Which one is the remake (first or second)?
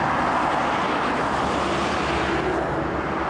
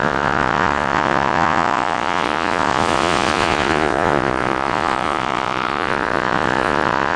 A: second